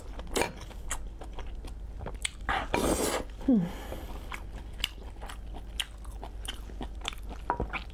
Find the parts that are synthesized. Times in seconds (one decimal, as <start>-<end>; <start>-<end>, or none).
none